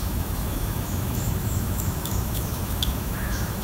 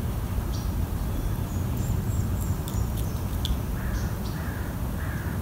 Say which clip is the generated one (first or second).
first